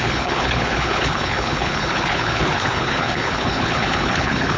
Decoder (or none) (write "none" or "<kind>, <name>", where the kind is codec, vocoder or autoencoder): codec, HILCodec